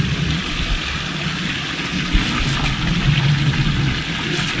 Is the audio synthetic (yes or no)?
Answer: no